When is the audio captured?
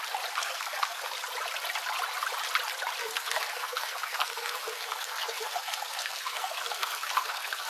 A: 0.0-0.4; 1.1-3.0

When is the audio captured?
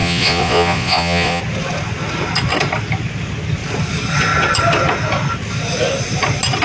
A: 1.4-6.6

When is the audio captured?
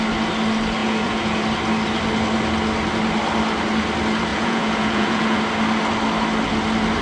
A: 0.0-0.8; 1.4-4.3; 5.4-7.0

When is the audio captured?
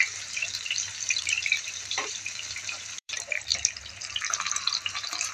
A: 3.5-4.4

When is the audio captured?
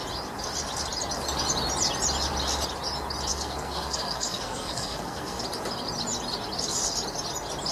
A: 0.0-3.3; 5.4-7.7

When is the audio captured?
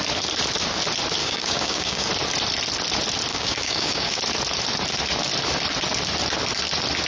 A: 0.0-1.2; 2.1-3.3; 4.2-7.1